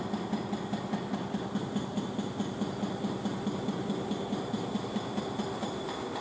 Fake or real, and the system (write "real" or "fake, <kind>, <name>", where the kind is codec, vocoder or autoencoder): real